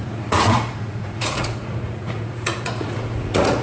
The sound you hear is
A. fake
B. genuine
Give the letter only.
A